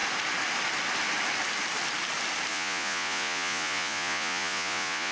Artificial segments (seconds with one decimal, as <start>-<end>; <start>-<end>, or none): 2.5-5.1